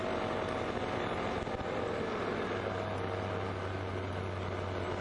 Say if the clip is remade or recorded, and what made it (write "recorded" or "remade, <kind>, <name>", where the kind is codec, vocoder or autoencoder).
recorded